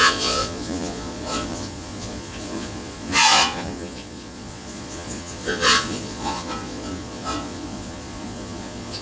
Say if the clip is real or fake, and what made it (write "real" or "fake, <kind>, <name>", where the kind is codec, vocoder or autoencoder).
fake, vocoder, Vocos